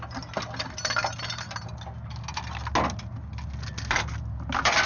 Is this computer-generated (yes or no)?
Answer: no